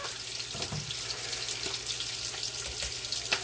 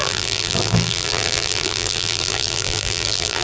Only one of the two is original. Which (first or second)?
first